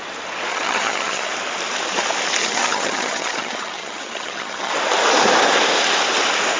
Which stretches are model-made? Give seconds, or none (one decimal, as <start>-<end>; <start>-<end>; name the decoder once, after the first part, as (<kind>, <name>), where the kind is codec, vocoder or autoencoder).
0.5-1.3 (vocoder, HiFi-GAN); 2.4-4.7